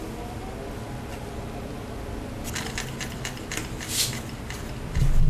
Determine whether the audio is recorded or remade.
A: recorded